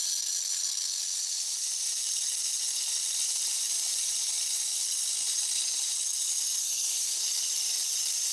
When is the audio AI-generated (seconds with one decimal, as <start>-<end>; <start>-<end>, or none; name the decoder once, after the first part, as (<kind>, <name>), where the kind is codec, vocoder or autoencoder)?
6.6-7.2 (codec, SNAC)